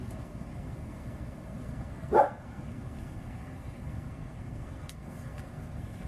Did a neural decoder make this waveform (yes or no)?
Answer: yes